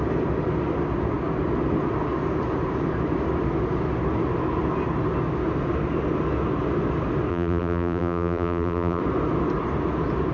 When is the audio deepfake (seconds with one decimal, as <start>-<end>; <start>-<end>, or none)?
7.3-9.0